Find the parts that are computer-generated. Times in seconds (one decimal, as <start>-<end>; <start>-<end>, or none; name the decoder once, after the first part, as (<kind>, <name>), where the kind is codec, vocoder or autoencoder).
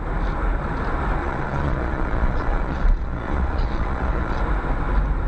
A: 1.2-4.4 (vocoder, Vocos)